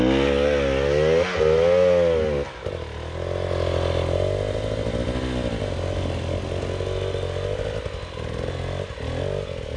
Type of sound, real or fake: real